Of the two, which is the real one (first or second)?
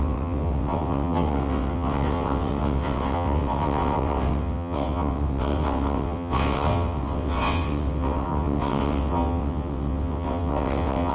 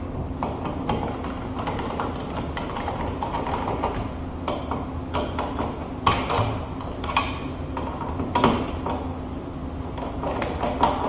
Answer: second